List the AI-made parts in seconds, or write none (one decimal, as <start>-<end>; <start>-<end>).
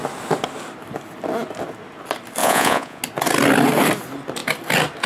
2.4-3.0